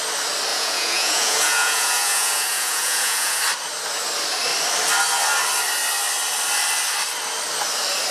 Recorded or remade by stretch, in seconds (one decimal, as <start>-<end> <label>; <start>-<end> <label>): 0.0-0.5 recorded; 0.5-3.4 remade; 3.4-8.1 recorded